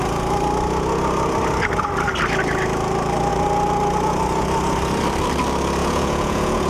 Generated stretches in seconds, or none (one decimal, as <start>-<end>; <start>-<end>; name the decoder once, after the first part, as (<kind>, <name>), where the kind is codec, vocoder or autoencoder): 5.8-6.7 (vocoder, Vocos)